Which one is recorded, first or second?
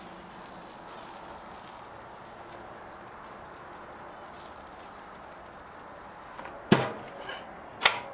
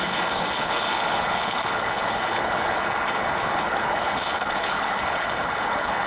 first